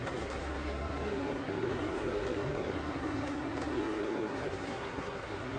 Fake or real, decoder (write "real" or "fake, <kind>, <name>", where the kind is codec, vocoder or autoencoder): fake, codec, SNAC